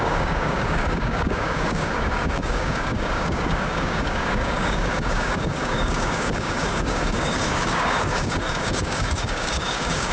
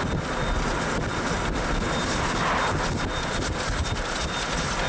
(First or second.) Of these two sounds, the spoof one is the first